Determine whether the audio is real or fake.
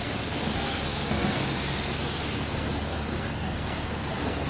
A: fake